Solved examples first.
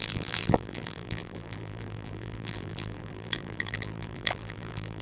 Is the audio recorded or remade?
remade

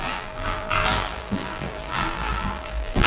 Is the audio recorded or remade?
remade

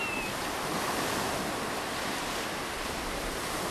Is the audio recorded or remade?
remade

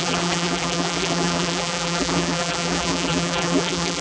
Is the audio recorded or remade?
remade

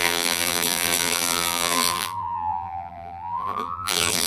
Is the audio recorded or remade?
remade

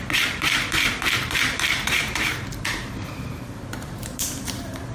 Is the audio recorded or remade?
remade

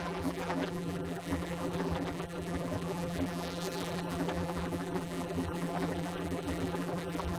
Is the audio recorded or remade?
remade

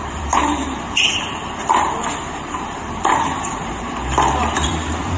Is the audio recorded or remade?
remade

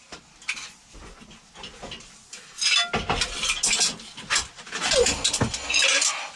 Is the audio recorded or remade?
recorded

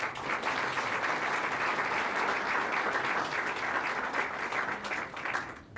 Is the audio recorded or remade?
recorded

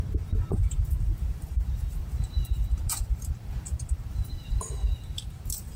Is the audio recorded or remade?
remade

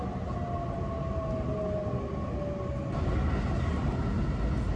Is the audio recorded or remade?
recorded